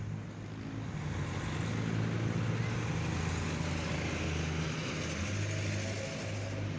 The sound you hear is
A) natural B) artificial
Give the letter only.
A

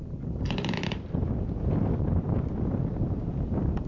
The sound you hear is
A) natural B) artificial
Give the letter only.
A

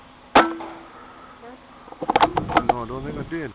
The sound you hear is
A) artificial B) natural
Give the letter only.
B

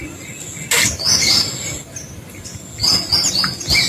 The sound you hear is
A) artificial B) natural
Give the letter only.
B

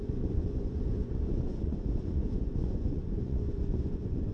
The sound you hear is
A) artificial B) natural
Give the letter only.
A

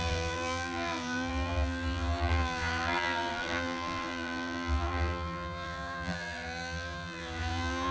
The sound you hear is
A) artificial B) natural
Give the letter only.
A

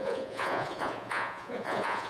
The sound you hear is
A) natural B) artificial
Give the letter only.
B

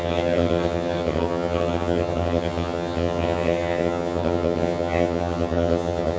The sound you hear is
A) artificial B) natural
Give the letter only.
A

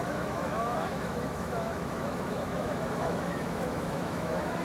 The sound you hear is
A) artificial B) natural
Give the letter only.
A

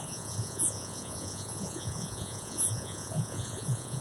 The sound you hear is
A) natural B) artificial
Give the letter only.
B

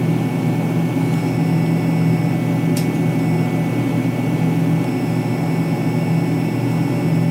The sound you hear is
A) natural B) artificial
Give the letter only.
A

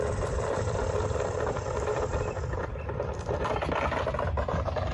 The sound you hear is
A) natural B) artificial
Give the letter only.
A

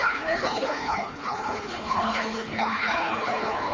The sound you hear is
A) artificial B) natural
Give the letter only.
A